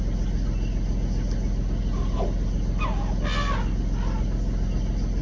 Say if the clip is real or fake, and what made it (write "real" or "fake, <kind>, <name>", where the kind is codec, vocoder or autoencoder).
real